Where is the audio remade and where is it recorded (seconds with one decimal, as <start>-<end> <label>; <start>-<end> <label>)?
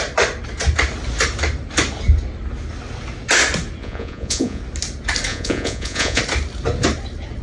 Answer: 0.0-3.8 recorded; 3.8-4.6 remade; 4.6-5.3 recorded; 5.3-6.2 remade; 6.2-7.4 recorded